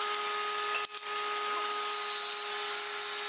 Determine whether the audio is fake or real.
real